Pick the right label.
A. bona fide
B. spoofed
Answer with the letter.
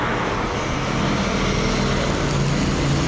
A